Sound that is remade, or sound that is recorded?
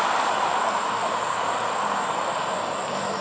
recorded